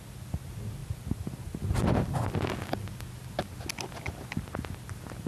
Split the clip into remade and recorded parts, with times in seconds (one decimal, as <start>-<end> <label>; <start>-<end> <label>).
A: 0.0-5.3 recorded